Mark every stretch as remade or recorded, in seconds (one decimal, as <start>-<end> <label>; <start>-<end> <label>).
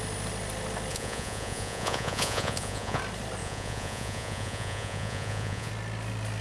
0.0-0.9 recorded; 0.9-3.0 remade; 3.0-3.4 recorded; 3.4-5.7 remade; 5.7-6.4 recorded